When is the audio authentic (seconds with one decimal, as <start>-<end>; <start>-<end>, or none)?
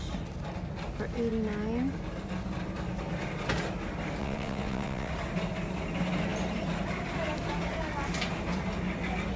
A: 0.0-4.2; 5.1-9.4